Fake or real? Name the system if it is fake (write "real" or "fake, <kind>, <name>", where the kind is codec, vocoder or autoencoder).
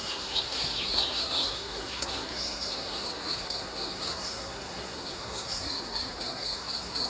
fake, codec, SNAC